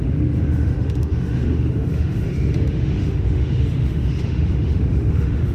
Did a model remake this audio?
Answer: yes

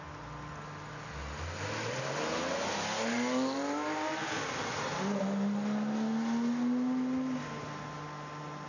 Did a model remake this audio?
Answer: no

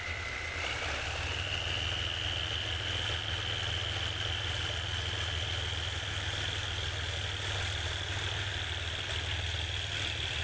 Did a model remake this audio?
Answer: no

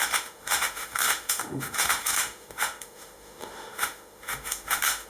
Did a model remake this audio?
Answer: yes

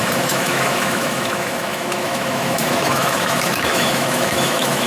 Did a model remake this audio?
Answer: yes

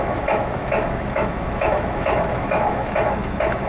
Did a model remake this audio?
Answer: yes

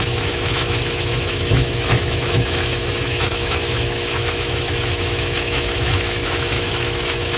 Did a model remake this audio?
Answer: yes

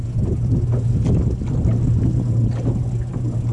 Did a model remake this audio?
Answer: no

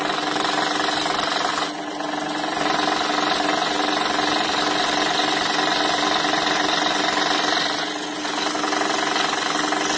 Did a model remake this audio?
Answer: no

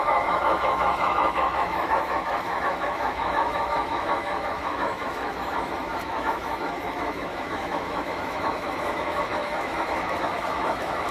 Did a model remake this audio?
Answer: yes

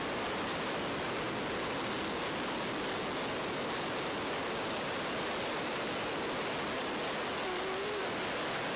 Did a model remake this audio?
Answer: no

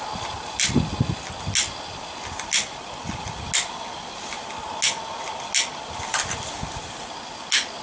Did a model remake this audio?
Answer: no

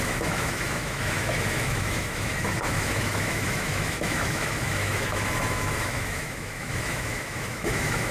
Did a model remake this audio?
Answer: yes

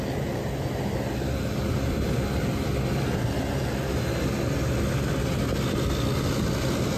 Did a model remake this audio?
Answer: no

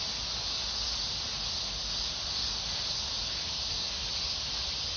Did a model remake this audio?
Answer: no